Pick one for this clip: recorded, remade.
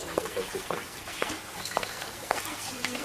remade